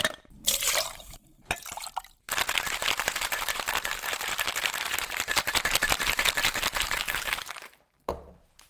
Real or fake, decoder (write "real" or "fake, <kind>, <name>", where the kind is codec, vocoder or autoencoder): fake, vocoder, BigVGAN v2